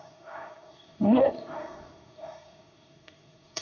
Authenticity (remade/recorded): remade